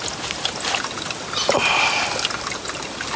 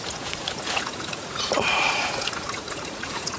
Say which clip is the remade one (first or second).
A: second